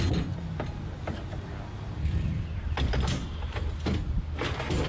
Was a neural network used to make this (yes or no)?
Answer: no